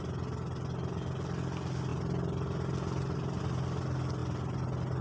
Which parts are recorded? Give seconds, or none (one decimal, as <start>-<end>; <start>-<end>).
0.0-5.0